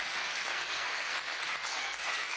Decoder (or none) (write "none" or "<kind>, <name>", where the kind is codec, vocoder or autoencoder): codec, SNAC